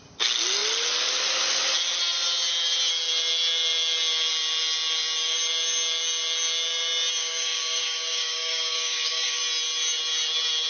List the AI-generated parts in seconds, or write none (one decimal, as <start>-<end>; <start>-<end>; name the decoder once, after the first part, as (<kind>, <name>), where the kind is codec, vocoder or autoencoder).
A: 7.2-9.4 (codec, DAC)